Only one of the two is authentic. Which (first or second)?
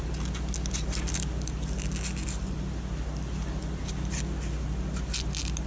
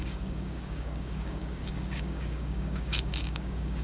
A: first